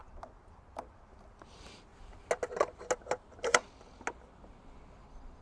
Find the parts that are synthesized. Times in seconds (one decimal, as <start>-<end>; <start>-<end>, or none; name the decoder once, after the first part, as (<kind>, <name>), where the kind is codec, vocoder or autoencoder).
none

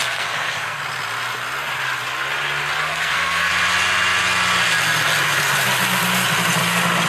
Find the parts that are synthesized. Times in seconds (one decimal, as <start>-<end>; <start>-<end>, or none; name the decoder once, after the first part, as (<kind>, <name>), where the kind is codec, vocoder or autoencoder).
0.0-0.8 (codec, SNAC); 2.9-3.5

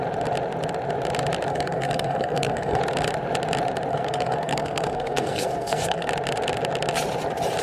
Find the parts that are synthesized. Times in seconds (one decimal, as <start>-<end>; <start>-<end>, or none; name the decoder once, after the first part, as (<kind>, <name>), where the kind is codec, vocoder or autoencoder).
1.5-2.8 (codec, SNAC); 3.9-6.1

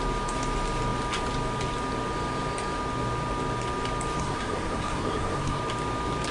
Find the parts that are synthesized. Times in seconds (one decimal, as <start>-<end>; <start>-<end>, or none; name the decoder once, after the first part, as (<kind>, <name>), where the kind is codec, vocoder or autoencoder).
4.2-5.6 (codec, SNAC)